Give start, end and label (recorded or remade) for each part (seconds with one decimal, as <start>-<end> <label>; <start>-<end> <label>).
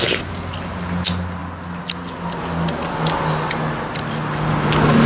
0.0-5.1 recorded